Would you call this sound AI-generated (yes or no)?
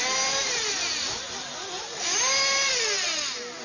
no